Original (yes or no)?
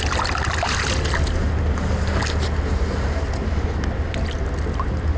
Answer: yes